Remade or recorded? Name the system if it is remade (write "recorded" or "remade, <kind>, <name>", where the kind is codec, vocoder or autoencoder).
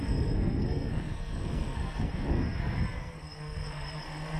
remade, codec, SNAC